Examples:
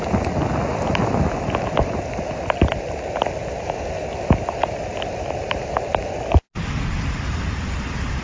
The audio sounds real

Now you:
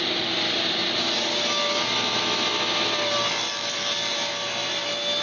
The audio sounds real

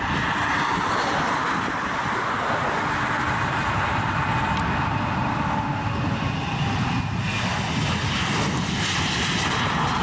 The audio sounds real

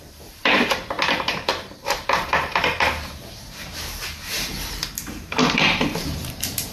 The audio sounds fake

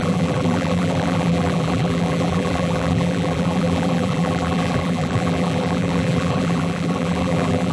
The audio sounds fake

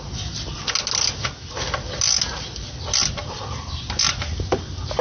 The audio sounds real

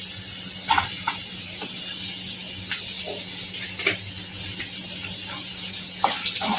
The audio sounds real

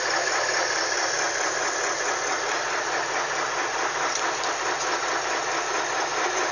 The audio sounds real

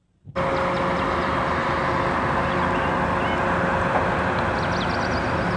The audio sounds real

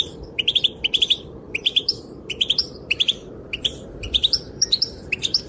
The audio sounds fake